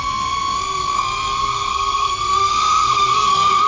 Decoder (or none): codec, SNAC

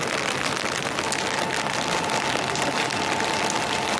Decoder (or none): none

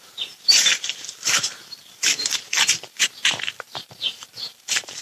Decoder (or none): vocoder, BigVGAN v2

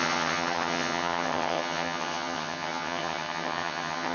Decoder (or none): vocoder, HiFi-GAN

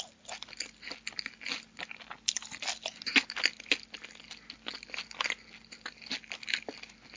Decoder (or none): none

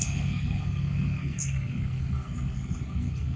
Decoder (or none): codec, SNAC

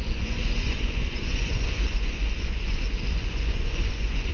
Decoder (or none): vocoder, Vocos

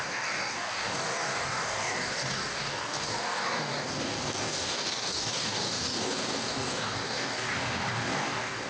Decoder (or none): codec, DAC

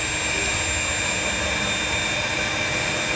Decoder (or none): none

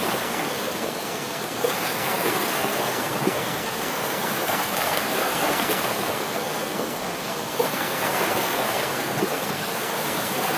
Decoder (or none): codec, SNAC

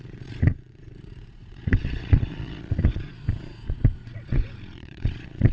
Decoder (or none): vocoder, Vocos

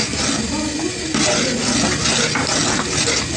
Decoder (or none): none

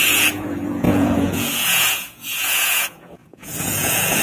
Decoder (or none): vocoder, Vocos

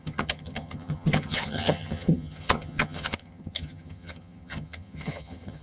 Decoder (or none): vocoder, HiFi-GAN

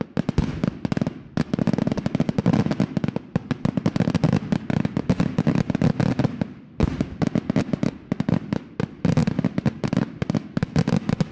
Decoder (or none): none